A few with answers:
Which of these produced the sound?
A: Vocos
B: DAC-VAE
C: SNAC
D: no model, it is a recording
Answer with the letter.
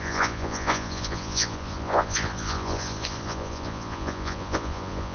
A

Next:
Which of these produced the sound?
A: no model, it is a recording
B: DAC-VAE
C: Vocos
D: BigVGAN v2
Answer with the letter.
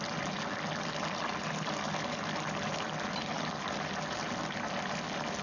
A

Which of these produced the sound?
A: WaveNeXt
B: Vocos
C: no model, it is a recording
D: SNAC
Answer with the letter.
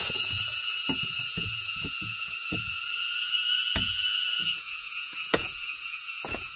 B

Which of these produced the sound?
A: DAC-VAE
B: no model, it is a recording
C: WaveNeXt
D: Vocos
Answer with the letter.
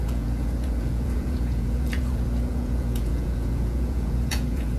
D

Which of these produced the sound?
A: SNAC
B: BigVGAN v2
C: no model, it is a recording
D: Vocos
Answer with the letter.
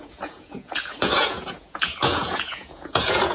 D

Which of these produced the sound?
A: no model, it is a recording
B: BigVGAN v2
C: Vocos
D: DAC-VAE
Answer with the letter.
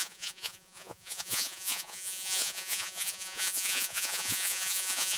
C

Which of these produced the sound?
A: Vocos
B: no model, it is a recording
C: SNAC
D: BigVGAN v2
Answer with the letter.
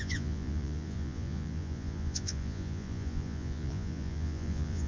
A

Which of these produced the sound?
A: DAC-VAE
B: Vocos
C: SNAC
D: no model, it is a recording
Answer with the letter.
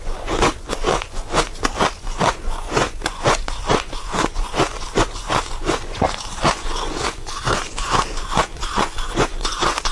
B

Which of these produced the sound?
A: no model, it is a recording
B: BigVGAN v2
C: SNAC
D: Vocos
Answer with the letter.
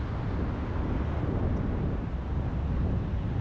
A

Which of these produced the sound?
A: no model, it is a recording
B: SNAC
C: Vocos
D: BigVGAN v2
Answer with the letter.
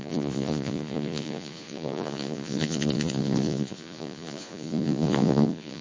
C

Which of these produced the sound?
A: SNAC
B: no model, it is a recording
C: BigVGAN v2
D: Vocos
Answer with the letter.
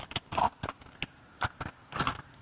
B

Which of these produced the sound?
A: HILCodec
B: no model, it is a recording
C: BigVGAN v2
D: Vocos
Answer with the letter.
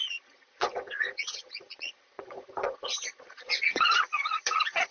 D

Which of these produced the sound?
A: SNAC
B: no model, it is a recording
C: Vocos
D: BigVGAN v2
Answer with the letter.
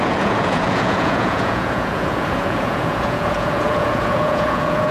C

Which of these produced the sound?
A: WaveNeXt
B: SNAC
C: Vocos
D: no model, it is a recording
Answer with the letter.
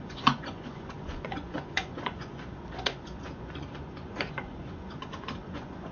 C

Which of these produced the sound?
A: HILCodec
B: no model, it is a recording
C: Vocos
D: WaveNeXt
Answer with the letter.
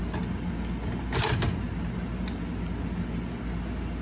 B